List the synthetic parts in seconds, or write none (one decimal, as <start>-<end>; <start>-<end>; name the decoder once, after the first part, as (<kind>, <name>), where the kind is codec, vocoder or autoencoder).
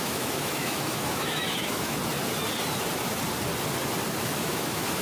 0.0-2.0 (autoencoder, DAC-VAE); 4.2-5.0